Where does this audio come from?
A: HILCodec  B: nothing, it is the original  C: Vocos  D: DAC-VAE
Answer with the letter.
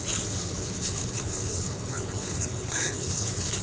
A